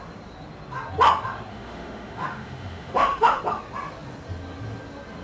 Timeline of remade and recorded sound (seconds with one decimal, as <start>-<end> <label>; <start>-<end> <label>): 0.0-1.5 recorded; 1.5-3.4 remade; 3.4-5.2 recorded